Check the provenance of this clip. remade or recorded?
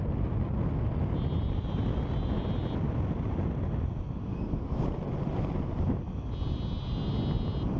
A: recorded